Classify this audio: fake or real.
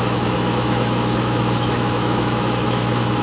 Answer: fake